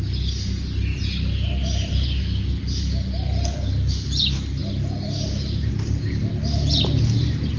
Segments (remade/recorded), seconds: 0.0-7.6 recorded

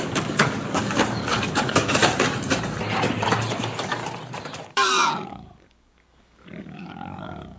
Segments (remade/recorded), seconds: 0.0-2.0 remade; 2.0-3.6 recorded; 3.6-4.0 remade; 4.0-4.6 recorded; 4.6-7.6 remade